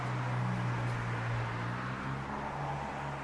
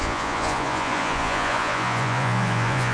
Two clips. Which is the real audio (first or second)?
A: first